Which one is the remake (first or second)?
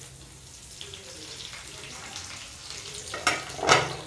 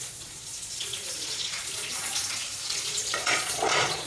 second